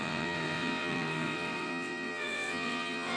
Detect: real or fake fake